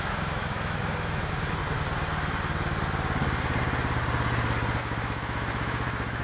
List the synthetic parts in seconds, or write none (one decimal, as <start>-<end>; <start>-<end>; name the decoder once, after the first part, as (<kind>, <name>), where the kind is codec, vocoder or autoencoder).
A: 0.0-1.6 (autoencoder, DAC-VAE); 4.8-6.2